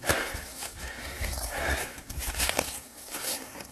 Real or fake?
fake